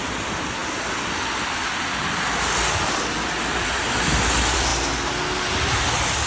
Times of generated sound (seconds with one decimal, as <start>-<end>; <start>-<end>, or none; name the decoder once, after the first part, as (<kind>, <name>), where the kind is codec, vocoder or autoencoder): 0.0-0.6 (vocoder, BigVGAN v2); 4.2-4.7; 5.6-6.3